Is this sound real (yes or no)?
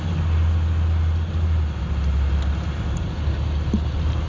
yes